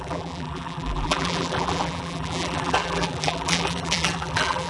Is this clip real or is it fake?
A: fake